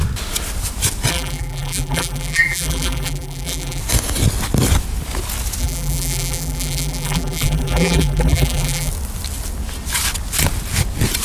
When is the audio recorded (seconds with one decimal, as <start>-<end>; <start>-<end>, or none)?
0.0-1.1; 3.8-5.6; 8.9-11.2